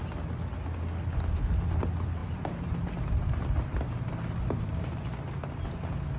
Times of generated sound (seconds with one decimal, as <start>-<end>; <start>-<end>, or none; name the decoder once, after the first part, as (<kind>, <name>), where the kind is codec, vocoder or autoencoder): 2.2-4.8 (vocoder, BigVGAN v2)